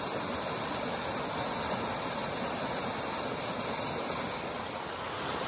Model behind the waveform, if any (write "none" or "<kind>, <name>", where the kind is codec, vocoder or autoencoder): none